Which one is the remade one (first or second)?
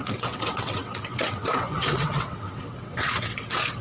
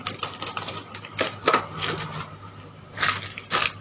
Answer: first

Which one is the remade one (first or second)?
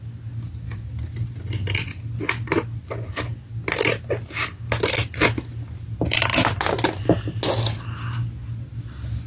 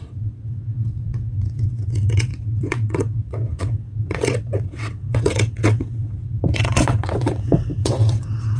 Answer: second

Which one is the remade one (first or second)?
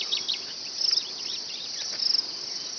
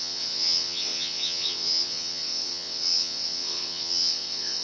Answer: second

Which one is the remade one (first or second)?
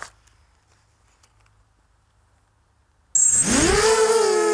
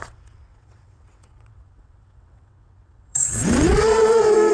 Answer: second